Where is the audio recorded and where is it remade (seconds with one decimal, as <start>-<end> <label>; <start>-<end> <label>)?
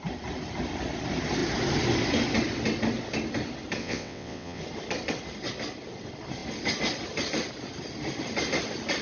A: 0.0-3.8 recorded; 3.8-4.6 remade; 4.6-9.0 recorded